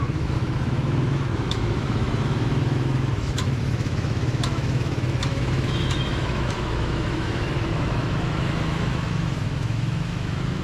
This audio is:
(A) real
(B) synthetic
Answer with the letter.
B